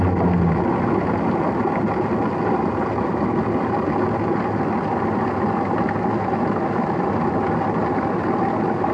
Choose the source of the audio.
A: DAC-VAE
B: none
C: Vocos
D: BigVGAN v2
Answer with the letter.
B